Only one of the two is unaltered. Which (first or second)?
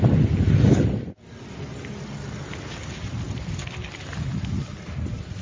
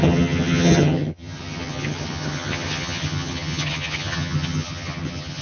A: first